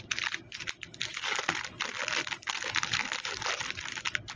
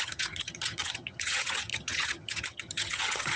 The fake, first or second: second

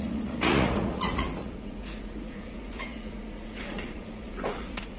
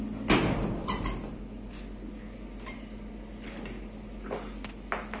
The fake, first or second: first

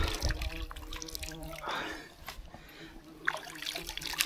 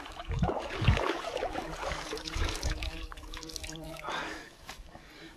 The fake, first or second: second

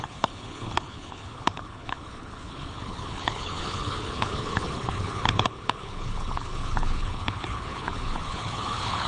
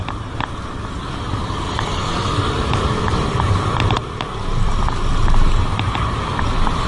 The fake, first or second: first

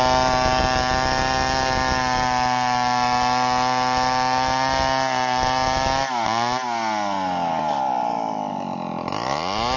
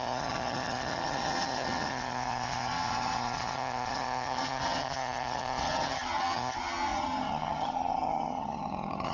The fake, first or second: second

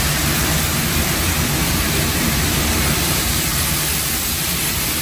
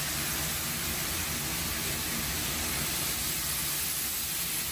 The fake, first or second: first